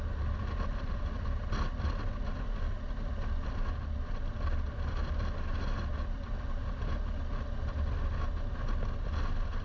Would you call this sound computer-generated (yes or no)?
no